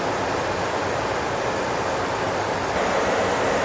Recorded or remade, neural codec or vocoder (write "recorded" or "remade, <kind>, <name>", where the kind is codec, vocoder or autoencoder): recorded